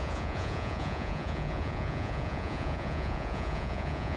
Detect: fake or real fake